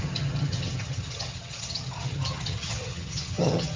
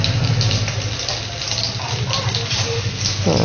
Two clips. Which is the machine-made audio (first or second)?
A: first